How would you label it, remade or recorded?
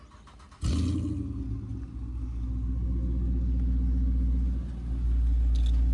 recorded